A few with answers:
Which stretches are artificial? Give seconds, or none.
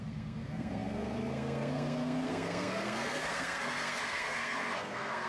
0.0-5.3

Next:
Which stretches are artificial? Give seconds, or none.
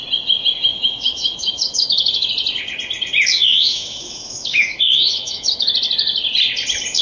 0.7-2.3; 3.3-5.7